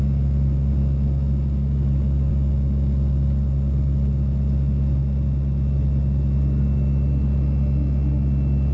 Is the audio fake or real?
real